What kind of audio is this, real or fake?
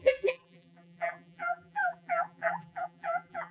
fake